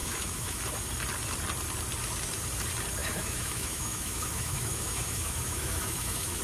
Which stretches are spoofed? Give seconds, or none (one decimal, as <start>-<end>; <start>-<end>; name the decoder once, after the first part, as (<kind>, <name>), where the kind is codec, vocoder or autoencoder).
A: 0.0-0.6 (autoencoder, DAC-VAE); 3.0-6.4